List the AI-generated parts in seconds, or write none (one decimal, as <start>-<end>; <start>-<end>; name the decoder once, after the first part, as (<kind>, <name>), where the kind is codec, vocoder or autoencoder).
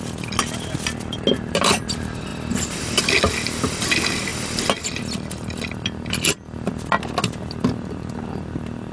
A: none